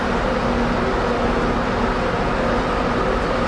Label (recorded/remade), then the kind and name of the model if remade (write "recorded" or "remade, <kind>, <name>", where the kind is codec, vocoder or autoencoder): recorded